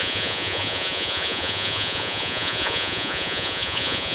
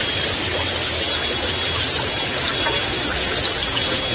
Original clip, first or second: second